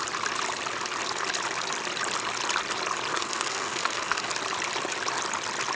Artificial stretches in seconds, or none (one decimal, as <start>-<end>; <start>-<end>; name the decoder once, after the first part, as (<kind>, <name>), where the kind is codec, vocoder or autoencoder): 3.1-4.3 (codec, SNAC)